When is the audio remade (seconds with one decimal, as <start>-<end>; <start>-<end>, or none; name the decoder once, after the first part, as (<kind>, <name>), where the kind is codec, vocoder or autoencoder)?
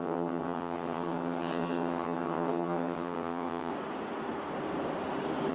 0.0-3.7 (vocoder, HiFi-GAN)